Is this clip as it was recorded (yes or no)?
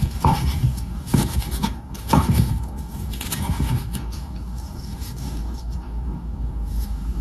no